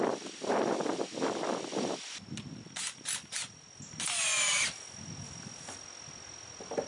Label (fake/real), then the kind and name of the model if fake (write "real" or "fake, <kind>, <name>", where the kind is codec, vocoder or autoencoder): real